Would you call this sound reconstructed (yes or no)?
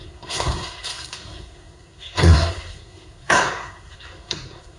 yes